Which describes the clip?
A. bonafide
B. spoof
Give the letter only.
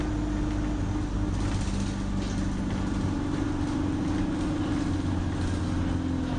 A